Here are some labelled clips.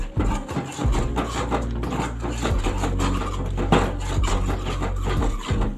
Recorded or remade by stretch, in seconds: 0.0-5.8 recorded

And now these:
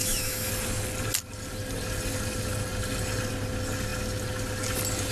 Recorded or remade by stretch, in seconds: 0.0-0.5 remade; 0.5-5.1 recorded

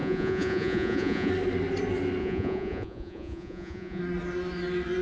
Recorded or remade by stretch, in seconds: 0.0-1.3 remade; 1.3-2.2 recorded; 2.2-4.0 remade; 4.0-5.0 recorded